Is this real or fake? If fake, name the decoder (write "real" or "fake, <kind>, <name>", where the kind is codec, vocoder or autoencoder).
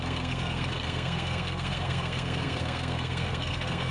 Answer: fake, codec, SNAC